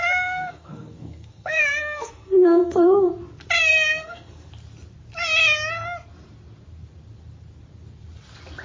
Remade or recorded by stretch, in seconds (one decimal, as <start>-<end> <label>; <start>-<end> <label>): 0.0-3.1 remade; 3.1-3.6 recorded; 3.6-4.5 remade; 4.5-8.6 recorded